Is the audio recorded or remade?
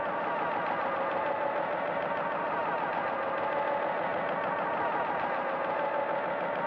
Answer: recorded